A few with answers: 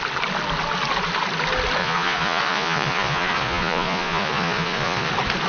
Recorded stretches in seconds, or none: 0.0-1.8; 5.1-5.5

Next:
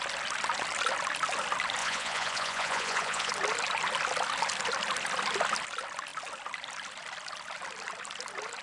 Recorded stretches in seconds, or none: 0.0-1.8; 3.3-8.6

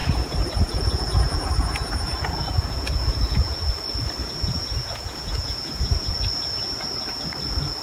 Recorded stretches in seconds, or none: 3.7-4.2; 6.1-7.8

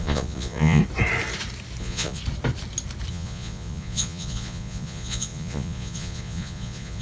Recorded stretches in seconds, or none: 0.8-1.8; 2.2-3.1

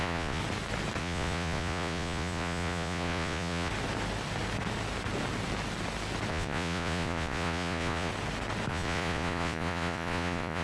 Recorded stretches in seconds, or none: 0.4-1.0; 3.7-6.3; 8.1-8.7

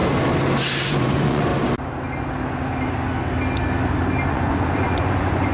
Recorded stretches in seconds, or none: 0.0-0.9; 1.5-4.3